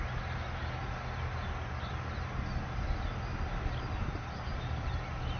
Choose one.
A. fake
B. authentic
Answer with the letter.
B